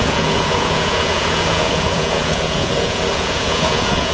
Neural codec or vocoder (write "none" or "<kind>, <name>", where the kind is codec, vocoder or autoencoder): vocoder, Vocos